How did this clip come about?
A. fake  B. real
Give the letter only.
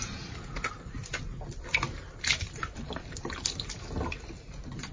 B